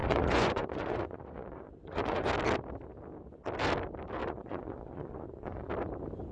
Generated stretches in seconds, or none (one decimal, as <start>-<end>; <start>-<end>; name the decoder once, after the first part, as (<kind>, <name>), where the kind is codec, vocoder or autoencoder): 0.0-2.3 (vocoder, Vocos); 4.2-5.7